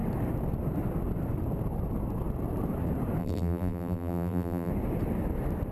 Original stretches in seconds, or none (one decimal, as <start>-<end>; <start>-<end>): 0.0-3.2; 4.7-5.7